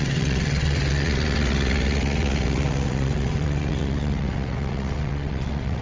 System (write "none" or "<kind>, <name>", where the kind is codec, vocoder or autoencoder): vocoder, WaveNeXt